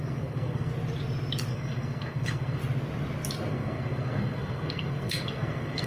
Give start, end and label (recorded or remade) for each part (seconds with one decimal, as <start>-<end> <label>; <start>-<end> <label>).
0.0-0.7 remade; 0.7-1.5 recorded; 1.5-2.6 remade; 2.6-3.5 recorded; 3.5-5.9 remade